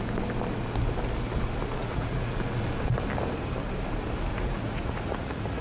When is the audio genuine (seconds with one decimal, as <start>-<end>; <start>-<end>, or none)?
0.0-1.8; 2.4-4.3